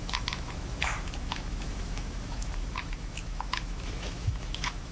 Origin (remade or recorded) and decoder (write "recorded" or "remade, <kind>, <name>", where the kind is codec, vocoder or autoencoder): remade, autoencoder, DAC-VAE